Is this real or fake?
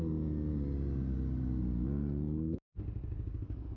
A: real